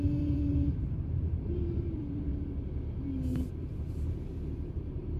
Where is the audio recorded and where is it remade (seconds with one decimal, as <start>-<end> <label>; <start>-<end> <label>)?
0.0-2.3 remade; 2.3-3.5 recorded; 3.5-5.2 remade